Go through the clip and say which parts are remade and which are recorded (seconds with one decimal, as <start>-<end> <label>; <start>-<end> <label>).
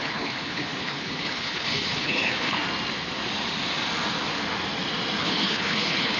0.0-2.6 remade; 2.6-5.2 recorded; 5.2-6.2 remade